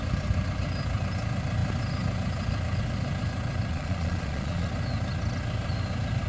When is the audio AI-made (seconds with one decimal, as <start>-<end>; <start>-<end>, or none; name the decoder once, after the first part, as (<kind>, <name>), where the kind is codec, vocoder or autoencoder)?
3.7-4.7 (vocoder, Vocos)